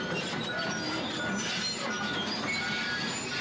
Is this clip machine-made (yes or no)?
no